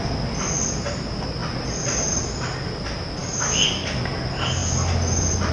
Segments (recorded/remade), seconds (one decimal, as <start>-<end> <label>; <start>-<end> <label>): 0.0-3.2 recorded; 3.2-4.0 remade; 4.0-5.5 recorded